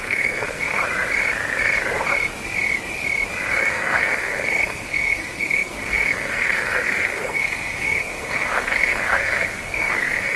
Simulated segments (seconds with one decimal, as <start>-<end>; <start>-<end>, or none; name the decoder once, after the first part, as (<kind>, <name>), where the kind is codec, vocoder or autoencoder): 0.0-0.8 (codec, SNAC); 3.6-10.4